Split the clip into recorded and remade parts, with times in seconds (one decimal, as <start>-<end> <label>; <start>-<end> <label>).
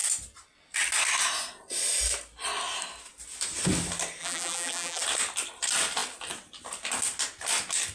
0.0-4.2 recorded; 4.2-5.0 remade; 5.0-7.9 recorded